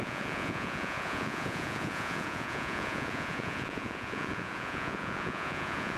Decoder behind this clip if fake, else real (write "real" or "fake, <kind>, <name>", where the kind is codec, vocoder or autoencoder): fake, vocoder, Vocos